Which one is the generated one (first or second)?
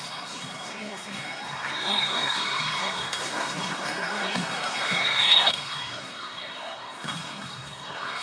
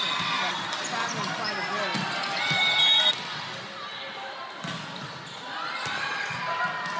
first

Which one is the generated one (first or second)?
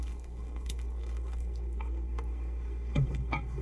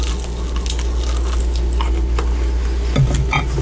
first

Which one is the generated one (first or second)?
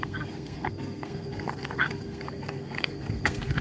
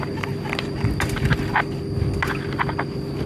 first